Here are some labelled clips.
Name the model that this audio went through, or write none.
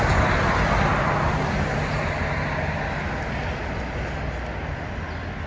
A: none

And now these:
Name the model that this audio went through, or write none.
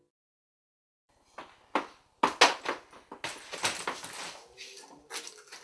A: none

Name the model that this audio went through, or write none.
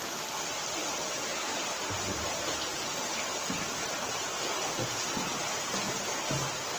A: none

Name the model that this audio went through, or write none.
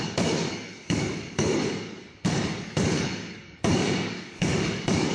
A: codec, DAC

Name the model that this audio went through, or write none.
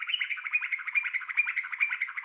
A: vocoder, BigVGAN v2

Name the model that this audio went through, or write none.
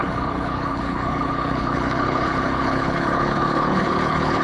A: codec, HILCodec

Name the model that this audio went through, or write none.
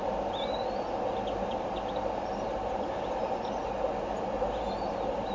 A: none